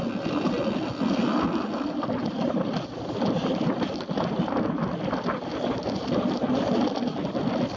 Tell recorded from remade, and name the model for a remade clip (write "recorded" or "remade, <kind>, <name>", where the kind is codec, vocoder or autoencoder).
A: recorded